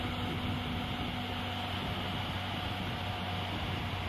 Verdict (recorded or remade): recorded